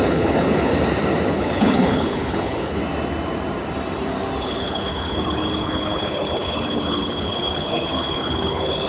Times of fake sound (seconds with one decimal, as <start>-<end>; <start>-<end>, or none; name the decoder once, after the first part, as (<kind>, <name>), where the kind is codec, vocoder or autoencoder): 0.0-0.7 (codec, HILCodec); 1.3-2.8; 4.4-8.9